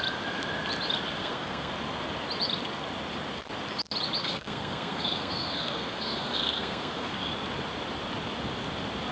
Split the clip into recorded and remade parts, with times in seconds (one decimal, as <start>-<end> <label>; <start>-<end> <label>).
0.0-1.2 recorded; 1.2-1.7 remade; 1.7-4.2 recorded; 4.2-7.3 remade; 7.3-9.1 recorded

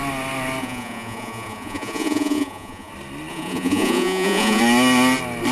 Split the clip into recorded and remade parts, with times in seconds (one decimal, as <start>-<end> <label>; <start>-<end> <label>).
0.0-0.6 recorded; 0.6-2.9 remade; 2.9-3.3 recorded; 3.3-4.6 remade; 4.6-5.5 recorded